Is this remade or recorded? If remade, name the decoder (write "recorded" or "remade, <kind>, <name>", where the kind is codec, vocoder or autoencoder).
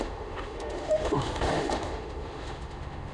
remade, autoencoder, DAC-VAE